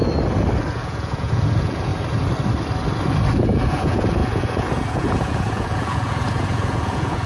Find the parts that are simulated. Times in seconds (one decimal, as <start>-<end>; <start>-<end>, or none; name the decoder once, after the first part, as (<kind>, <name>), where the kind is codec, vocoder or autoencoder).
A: 0.7-1.9 (vocoder, Vocos); 3.3-7.3